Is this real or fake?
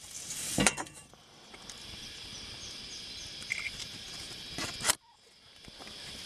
real